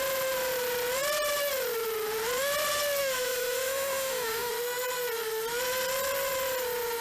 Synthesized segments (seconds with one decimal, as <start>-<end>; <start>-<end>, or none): 3.0-4.5